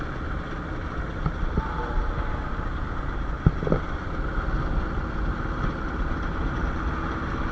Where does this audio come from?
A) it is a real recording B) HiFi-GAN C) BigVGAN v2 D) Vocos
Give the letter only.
A